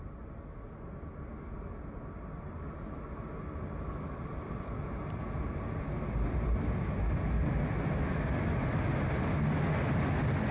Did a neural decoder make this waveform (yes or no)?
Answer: no